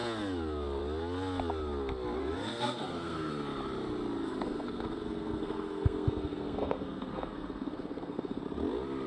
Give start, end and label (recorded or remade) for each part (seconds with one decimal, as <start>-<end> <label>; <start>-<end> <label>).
0.0-2.2 recorded; 2.2-3.3 remade; 3.3-4.3 recorded; 4.3-8.4 remade; 8.4-9.1 recorded